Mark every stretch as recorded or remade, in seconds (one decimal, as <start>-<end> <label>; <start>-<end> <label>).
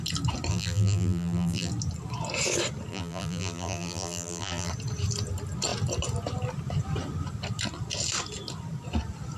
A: 0.0-0.5 recorded; 0.5-1.7 remade; 1.7-2.9 recorded; 2.9-4.7 remade; 4.7-9.4 recorded